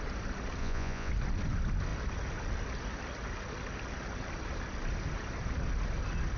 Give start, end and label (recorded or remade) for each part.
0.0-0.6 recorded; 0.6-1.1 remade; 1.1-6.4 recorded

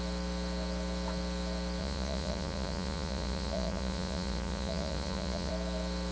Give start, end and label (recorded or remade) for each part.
0.0-1.8 recorded; 1.8-5.5 remade; 5.5-6.1 recorded

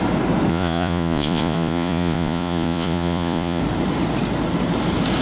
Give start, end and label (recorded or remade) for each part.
0.0-0.5 recorded; 0.5-3.6 remade; 3.6-5.2 recorded

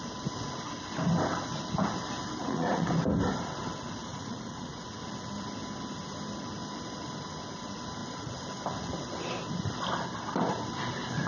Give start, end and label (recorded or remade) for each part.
0.0-2.4 recorded; 2.4-2.9 remade; 2.9-4.1 recorded; 4.1-5.0 remade; 5.0-11.3 recorded

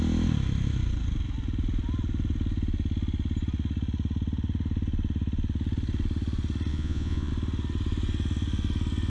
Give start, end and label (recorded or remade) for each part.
0.0-6.7 recorded; 6.7-7.3 remade; 7.3-9.1 recorded

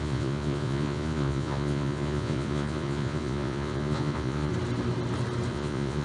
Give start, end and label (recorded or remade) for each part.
0.0-4.5 remade; 4.5-5.5 recorded; 5.5-6.0 remade

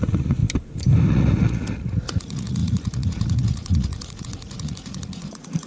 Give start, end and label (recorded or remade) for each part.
0.0-0.4 remade; 0.4-1.1 recorded; 1.1-5.7 remade

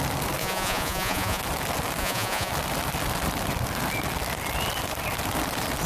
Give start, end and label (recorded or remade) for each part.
0.0-0.4 recorded; 0.4-1.4 remade; 1.4-2.0 recorded; 2.0-2.5 remade; 2.5-5.9 recorded